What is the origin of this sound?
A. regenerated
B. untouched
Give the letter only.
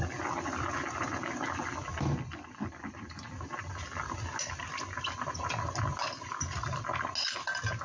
B